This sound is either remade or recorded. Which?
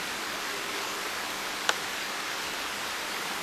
remade